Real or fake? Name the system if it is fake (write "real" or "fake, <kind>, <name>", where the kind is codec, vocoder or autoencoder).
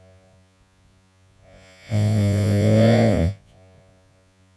fake, vocoder, Vocos